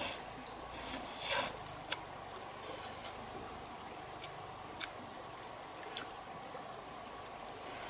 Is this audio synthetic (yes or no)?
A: no